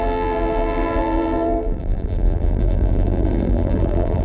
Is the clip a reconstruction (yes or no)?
yes